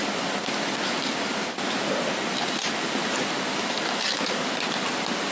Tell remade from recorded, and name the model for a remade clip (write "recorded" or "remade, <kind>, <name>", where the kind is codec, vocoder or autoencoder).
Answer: recorded